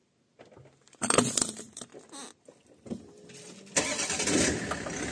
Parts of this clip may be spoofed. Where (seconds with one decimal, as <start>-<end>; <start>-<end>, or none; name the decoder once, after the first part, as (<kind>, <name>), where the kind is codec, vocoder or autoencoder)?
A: none